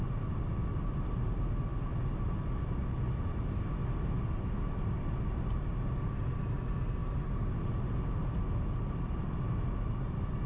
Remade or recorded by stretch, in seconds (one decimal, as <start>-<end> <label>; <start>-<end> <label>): 0.0-10.5 recorded